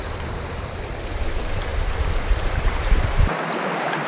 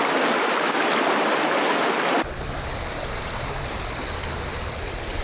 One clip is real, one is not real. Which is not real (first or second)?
first